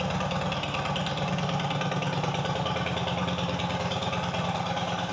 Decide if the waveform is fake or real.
real